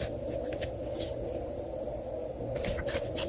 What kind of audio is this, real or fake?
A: real